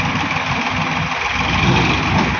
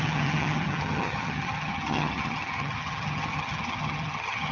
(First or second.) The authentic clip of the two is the first